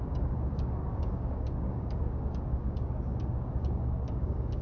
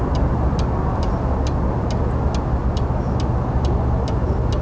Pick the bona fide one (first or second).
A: second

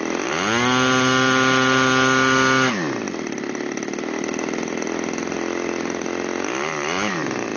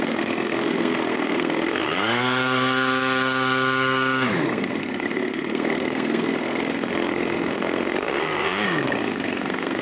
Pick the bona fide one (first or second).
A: first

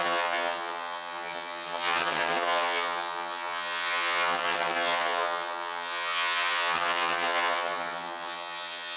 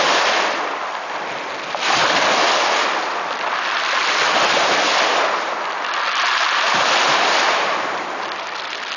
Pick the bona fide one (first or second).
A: second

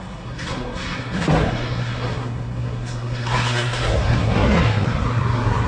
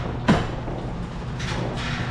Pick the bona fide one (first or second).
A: second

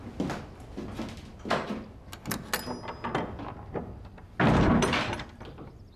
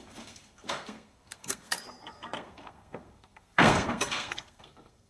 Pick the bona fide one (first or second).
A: first